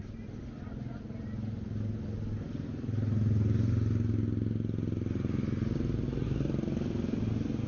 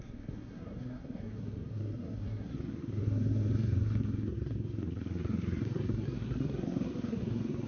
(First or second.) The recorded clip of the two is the first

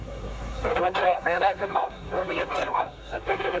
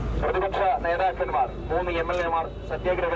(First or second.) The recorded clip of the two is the second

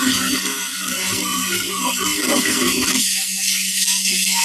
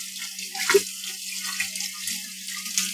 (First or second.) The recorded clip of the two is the second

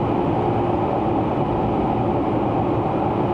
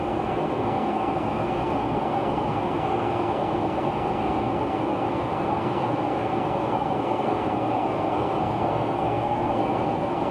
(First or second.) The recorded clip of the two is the first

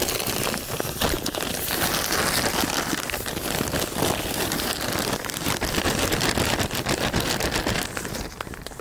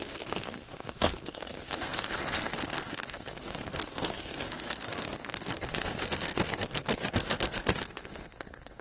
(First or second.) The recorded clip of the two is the first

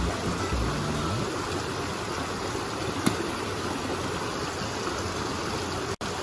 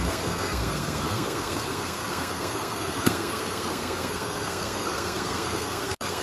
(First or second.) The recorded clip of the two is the first